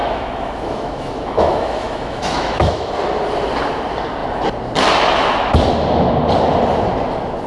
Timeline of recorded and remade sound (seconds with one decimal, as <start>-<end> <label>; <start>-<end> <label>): 0.0-2.9 remade; 2.9-7.5 recorded